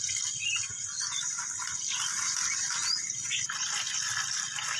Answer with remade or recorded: recorded